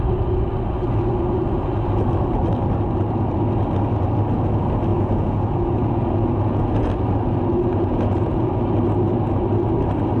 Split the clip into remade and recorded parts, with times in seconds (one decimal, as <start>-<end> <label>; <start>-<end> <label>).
0.0-4.9 recorded; 4.9-6.9 remade; 6.9-7.7 recorded; 7.7-8.5 remade; 8.5-10.2 recorded